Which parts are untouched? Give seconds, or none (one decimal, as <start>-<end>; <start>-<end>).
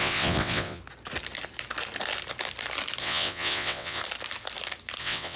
0.8-3.0; 4.0-5.0